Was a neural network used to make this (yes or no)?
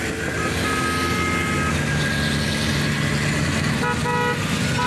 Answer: no